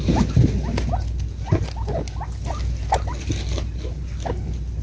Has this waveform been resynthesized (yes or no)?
no